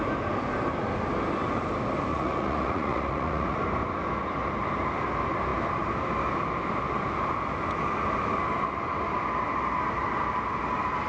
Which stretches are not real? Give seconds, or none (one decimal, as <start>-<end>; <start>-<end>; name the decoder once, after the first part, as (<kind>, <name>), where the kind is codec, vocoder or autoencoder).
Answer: 2.1-3.6 (vocoder, Vocos)